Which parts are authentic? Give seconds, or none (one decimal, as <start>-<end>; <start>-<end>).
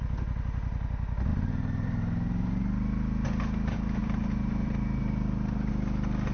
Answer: 0.0-1.3; 2.6-4.0; 5.7-6.3